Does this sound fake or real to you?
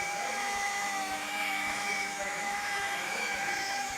fake